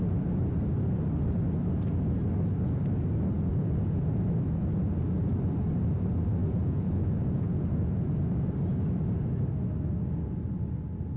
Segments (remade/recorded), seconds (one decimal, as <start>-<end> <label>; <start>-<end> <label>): 0.0-3.5 recorded; 3.5-4.2 remade; 4.2-6.4 recorded; 6.4-8.1 remade; 8.1-11.2 recorded